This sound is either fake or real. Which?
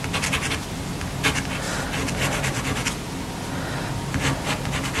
real